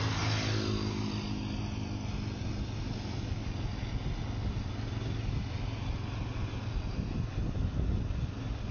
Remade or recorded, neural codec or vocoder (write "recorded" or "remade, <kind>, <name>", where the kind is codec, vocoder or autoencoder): recorded